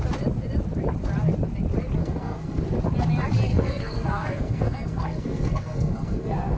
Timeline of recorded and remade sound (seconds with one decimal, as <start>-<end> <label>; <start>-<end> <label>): 0.0-2.0 recorded; 2.0-2.6 remade; 2.6-3.5 recorded; 3.5-6.6 remade